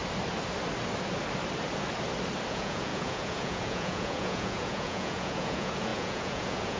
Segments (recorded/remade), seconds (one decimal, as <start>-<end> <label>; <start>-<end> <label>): 0.0-2.5 recorded; 2.5-6.8 remade